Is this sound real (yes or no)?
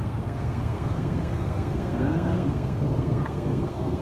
no